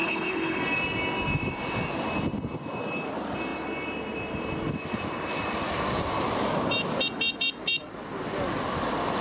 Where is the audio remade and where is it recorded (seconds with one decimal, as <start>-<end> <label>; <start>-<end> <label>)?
0.0-0.6 remade; 0.6-9.2 recorded